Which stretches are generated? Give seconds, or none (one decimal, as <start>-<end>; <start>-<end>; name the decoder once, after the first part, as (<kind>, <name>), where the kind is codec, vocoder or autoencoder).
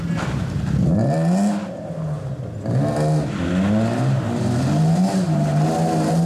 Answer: none